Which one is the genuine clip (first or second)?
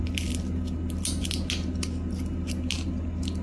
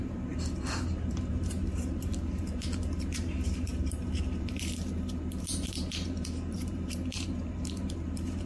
first